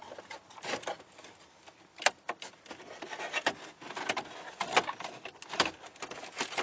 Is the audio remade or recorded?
recorded